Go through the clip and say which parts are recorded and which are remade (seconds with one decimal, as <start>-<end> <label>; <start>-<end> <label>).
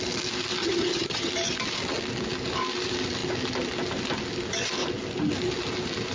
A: 0.0-0.6 recorded; 0.6-1.3 remade; 1.3-6.1 recorded